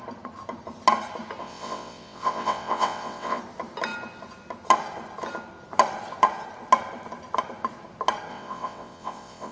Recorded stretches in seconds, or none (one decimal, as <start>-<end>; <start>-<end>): 0.0-1.4; 3.4-8.3